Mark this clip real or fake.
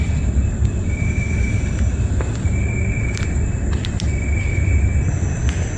real